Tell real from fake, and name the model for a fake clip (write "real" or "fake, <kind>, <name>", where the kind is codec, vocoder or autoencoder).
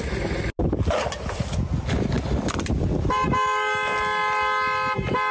real